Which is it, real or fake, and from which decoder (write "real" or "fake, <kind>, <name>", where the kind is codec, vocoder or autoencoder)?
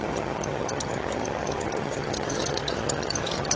fake, vocoder, HiFi-GAN